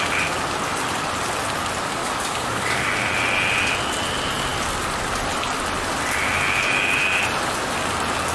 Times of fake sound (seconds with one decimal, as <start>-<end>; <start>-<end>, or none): 2.0-2.9